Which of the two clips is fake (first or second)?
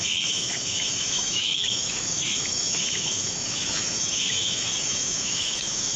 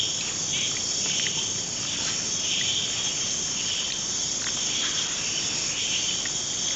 first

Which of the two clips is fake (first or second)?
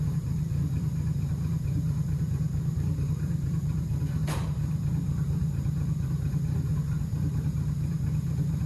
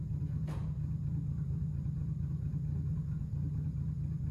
first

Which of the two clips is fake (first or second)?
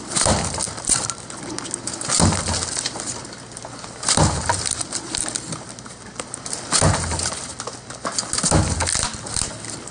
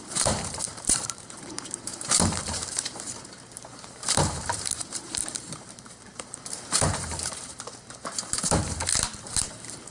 second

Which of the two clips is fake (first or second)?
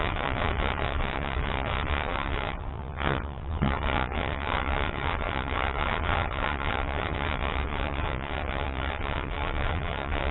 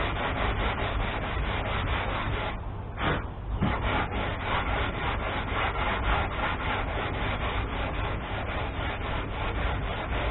first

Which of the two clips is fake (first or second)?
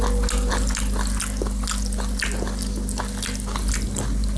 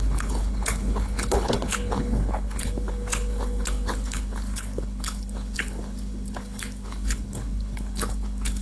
second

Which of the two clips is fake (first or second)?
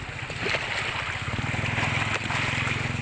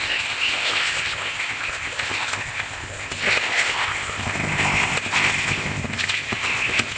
second